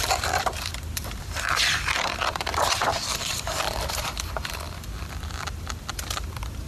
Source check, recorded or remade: remade